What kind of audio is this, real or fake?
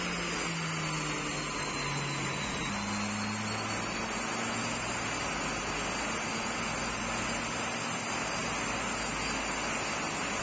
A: real